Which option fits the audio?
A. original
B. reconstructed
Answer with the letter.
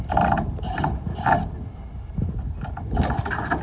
A